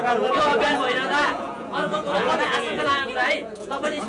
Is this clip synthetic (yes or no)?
yes